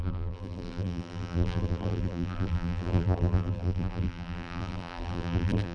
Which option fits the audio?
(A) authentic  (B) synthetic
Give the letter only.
B